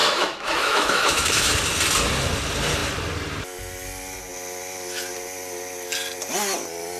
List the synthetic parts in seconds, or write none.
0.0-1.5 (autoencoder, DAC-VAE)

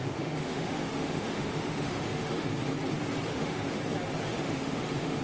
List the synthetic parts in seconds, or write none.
0.0-2.6 (autoencoder, DAC-VAE); 3.3-3.8; 4.3-5.2

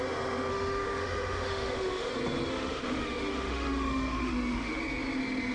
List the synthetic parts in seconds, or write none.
0.5-2.1 (autoencoder, DAC-VAE); 2.5-4.8